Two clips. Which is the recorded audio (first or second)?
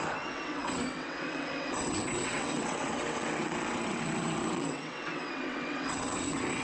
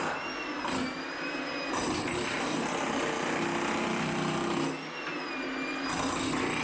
second